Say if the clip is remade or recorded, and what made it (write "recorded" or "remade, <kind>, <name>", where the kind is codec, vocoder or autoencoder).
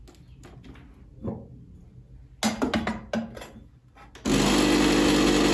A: recorded